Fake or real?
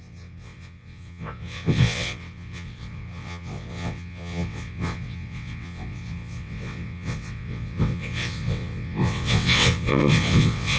fake